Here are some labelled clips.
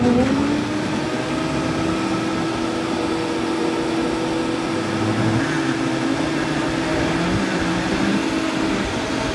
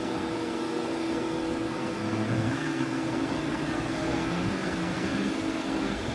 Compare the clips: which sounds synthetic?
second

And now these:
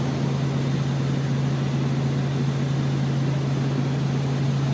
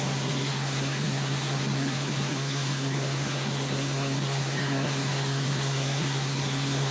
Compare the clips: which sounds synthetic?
second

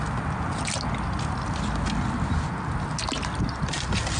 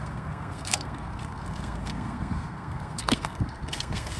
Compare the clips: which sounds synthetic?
second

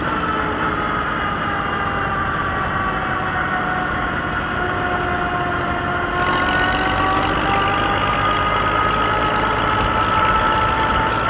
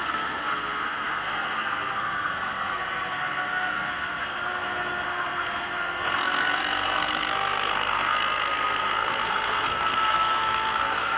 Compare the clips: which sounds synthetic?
second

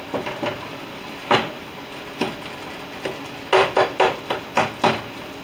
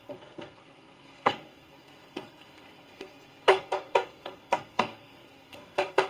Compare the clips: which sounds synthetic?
second